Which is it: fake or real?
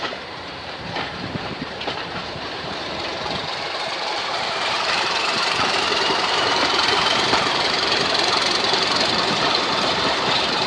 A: fake